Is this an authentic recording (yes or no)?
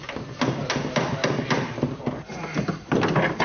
yes